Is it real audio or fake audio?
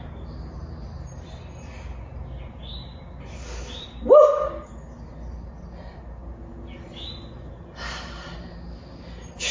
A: real